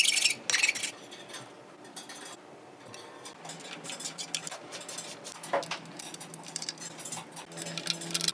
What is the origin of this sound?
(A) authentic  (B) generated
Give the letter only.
A